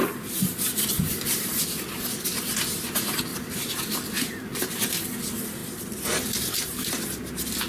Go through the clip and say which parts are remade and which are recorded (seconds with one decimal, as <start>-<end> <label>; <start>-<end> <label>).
0.0-1.6 remade; 1.6-7.7 recorded